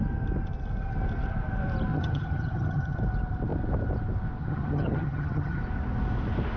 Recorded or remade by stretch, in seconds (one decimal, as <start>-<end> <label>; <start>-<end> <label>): 0.0-1.9 recorded; 1.9-3.0 remade; 3.0-4.4 recorded; 4.4-5.6 remade; 5.6-6.6 recorded